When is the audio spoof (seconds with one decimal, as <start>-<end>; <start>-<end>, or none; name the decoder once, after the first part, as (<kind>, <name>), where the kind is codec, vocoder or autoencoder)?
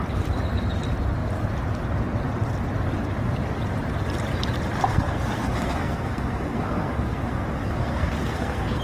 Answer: 4.9-8.8 (codec, SNAC)